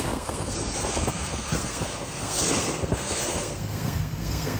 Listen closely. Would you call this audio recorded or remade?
remade